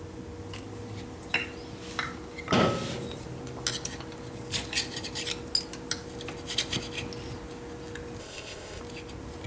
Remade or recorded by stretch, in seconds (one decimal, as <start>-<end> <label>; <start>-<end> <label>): 0.0-8.2 recorded; 8.2-8.8 remade; 8.8-9.5 recorded